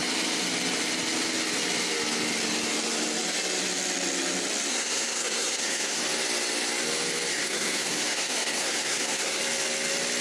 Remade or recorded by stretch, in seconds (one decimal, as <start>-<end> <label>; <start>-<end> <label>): 0.0-4.7 recorded; 4.7-6.0 remade; 6.0-7.3 recorded; 7.3-9.4 remade; 9.4-10.2 recorded